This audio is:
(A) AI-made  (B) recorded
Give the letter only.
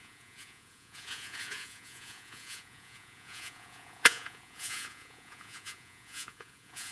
A